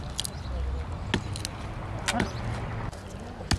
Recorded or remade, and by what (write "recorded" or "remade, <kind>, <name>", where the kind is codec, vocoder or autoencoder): recorded